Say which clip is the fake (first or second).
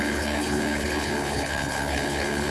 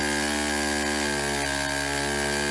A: first